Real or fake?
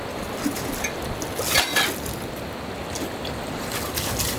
real